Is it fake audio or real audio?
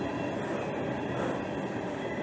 real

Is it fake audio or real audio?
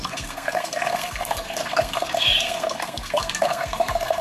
fake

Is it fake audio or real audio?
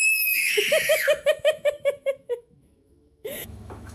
fake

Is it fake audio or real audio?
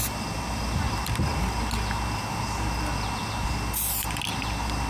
real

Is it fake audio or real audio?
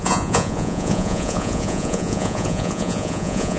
fake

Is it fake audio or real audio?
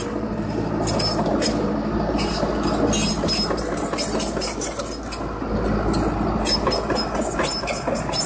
real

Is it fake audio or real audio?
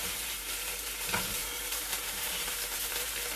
fake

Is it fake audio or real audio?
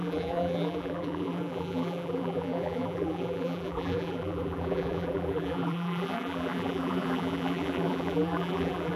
fake